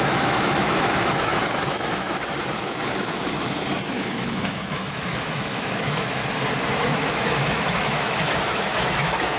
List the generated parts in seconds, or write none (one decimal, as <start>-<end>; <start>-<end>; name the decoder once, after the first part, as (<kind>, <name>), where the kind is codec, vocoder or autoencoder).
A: 0.0-6.2 (autoencoder, DAC-VAE); 6.7-9.4

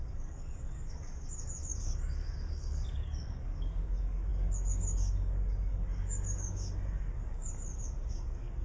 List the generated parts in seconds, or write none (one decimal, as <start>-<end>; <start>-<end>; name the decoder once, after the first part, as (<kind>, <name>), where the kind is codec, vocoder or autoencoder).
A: 0.0-8.6 (codec, DAC)

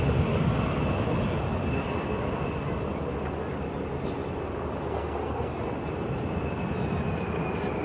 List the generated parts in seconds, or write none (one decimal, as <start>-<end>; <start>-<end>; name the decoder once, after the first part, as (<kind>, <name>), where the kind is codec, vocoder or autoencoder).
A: 4.9-5.6 (codec, SNAC)

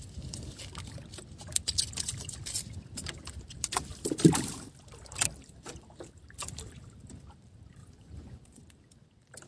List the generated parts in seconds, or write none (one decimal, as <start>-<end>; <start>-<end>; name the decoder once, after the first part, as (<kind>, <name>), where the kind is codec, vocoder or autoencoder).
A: 7.8-8.6 (vocoder, Vocos)

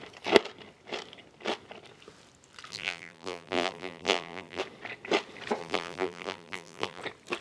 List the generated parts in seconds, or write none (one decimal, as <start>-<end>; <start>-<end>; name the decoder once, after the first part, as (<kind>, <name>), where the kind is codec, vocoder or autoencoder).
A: 2.7-4.6 (vocoder, BigVGAN v2); 5.6-7.0

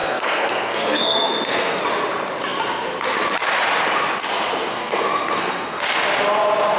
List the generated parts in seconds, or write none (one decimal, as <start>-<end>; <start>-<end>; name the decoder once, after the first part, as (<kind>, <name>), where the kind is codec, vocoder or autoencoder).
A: 0.0-1.8 (codec, SNAC); 4.7-5.8